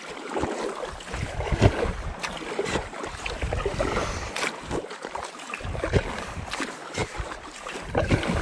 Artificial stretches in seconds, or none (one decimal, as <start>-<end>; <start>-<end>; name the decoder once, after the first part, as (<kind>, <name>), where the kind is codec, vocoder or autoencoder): none